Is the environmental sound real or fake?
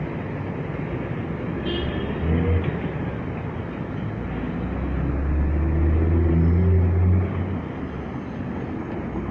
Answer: real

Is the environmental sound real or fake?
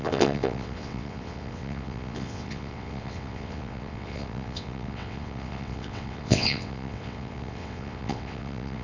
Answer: fake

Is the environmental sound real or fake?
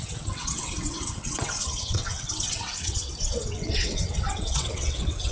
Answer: fake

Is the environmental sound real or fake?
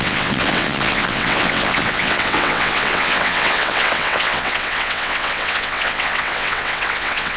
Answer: fake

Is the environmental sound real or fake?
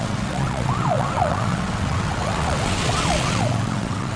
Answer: fake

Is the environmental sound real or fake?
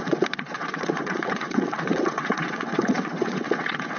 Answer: fake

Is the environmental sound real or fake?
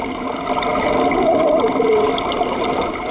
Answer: real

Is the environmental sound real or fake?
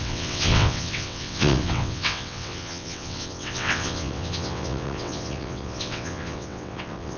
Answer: fake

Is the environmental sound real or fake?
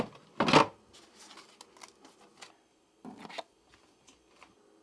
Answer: real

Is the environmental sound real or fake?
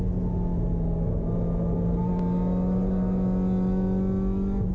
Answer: real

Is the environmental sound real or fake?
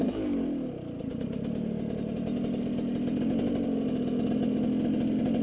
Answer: real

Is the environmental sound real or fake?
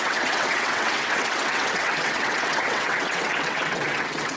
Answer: fake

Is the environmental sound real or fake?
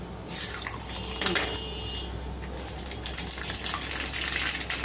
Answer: real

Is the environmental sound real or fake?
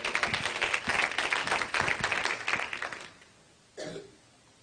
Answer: real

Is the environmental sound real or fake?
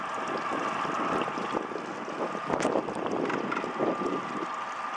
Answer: real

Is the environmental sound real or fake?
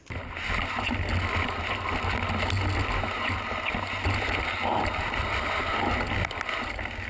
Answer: real